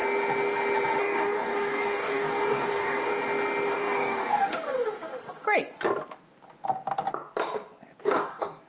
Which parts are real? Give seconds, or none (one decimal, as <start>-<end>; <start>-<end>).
0.0-1.0; 3.1-3.7; 4.5-8.1